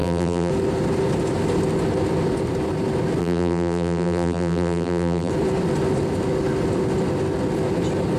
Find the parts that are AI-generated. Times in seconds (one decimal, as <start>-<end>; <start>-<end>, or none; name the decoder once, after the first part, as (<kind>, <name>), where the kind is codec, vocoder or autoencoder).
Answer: 0.0-0.5 (vocoder, BigVGAN v2); 3.2-5.3